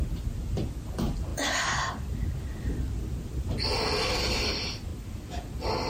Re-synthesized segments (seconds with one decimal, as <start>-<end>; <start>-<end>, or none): none